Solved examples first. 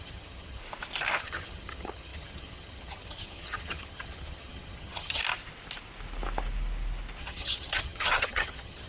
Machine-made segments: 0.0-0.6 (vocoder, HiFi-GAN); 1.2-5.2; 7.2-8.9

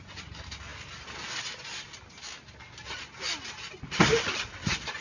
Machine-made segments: none

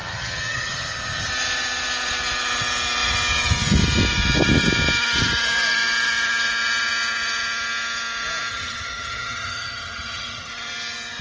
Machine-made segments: 0.0-1.3 (vocoder, HiFi-GAN); 8.5-10.5